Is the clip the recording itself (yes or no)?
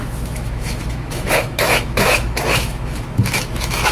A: no